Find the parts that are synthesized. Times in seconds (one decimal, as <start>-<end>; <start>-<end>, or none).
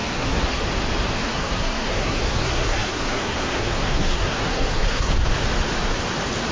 0.0-0.6; 1.2-5.1